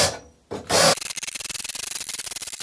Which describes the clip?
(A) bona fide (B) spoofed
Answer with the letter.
A